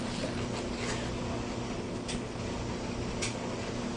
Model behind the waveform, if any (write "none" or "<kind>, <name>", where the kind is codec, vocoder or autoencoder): none